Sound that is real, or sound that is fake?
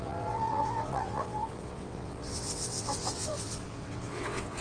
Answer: fake